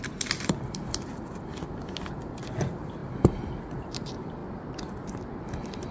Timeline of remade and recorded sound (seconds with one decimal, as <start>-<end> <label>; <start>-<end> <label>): 0.0-5.9 recorded